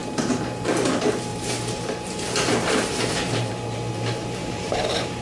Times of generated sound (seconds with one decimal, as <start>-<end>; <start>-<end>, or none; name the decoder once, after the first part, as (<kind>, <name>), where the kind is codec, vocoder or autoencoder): 0.0-0.7 (vocoder, BigVGAN v2); 1.3-3.5; 4.4-5.2